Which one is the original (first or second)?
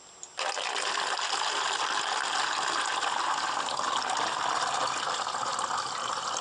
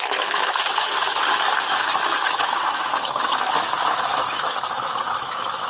first